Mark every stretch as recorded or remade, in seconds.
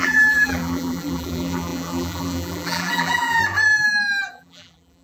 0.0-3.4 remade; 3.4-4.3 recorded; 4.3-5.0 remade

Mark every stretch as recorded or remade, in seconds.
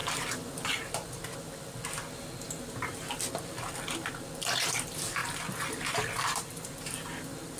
0.0-1.2 remade; 1.2-2.5 recorded; 2.5-5.2 remade; 5.2-6.0 recorded; 6.0-7.6 remade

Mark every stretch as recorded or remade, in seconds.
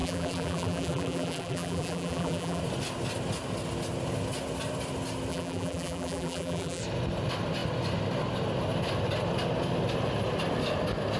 0.0-2.6 remade; 2.6-5.3 recorded; 5.3-6.8 remade; 6.8-11.2 recorded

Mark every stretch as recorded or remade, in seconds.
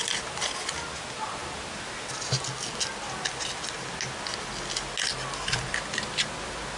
0.0-6.8 recorded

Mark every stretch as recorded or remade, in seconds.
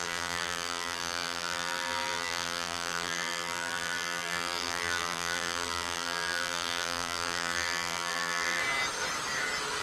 0.0-8.6 remade; 8.6-9.8 recorded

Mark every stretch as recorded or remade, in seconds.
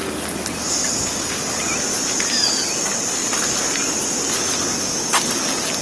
0.0-5.8 recorded